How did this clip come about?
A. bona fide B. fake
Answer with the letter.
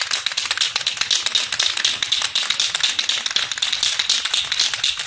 A